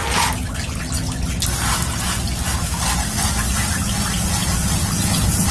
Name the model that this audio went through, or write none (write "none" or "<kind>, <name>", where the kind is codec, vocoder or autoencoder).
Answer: none